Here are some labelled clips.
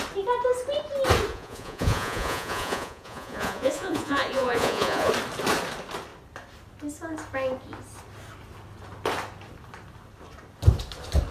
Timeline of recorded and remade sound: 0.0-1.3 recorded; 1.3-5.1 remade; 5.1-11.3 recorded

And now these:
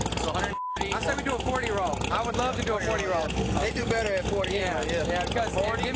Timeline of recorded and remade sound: 0.0-6.0 recorded

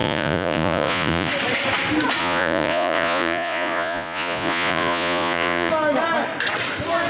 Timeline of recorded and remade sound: 0.0-1.3 remade; 1.3-2.2 recorded; 2.2-5.7 remade; 5.7-7.1 recorded

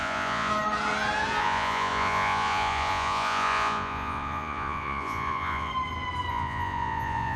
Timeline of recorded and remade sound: 0.0-0.5 remade; 0.5-1.4 recorded; 1.4-5.7 remade; 5.7-6.3 recorded; 6.3-7.4 remade

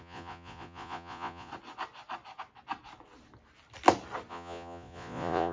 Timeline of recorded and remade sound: 0.0-1.5 remade; 1.5-4.3 recorded; 4.3-5.5 remade

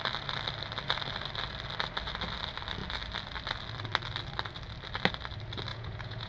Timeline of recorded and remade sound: 0.0-5.7 recorded; 5.7-6.3 remade

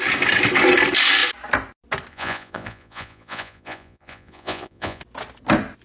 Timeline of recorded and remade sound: 0.0-2.1 recorded; 2.1-5.0 remade; 5.0-5.8 recorded

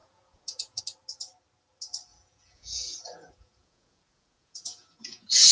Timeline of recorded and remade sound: 0.0-0.8 remade; 0.8-2.1 recorded; 2.1-5.5 remade